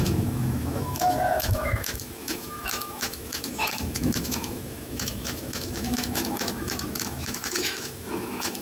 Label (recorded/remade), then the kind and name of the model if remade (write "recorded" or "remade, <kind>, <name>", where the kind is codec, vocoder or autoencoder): remade, autoencoder, DAC-VAE